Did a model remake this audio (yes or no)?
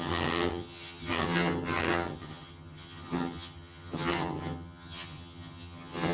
yes